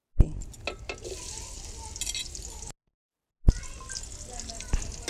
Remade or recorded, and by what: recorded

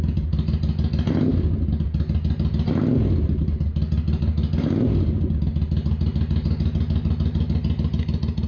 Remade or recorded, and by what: recorded